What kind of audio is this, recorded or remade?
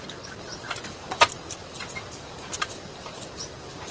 recorded